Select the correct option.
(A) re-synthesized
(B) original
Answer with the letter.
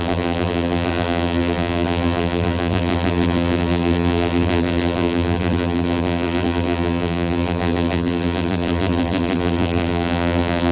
A